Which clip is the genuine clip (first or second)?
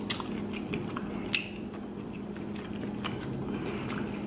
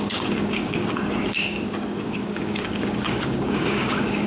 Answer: first